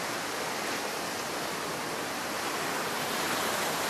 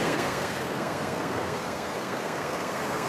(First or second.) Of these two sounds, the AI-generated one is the second